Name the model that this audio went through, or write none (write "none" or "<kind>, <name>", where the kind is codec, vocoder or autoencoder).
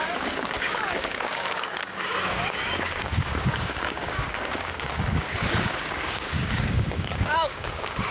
codec, DAC